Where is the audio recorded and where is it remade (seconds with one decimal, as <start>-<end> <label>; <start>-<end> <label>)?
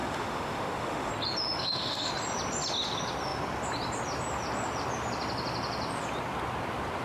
0.0-1.1 remade; 1.1-1.6 recorded; 1.6-2.1 remade; 2.1-7.0 recorded